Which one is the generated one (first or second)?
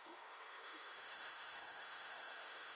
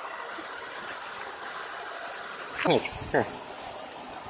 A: first